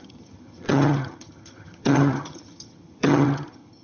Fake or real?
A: fake